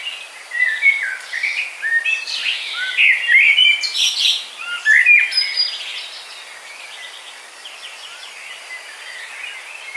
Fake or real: real